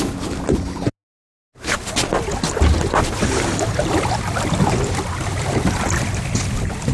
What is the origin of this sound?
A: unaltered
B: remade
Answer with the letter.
A